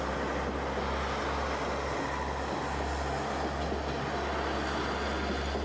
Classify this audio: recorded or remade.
recorded